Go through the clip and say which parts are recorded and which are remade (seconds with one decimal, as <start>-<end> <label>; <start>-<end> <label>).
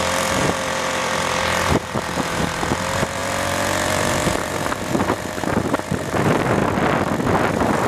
0.0-6.6 remade; 6.6-7.5 recorded; 7.5-7.9 remade